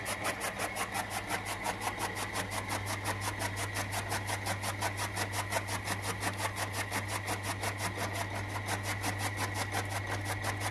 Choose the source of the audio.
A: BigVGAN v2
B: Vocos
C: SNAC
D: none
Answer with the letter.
D